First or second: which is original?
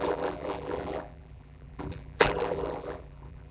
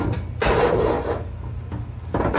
second